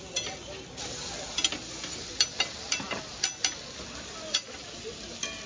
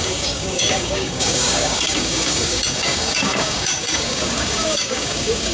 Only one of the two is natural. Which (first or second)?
first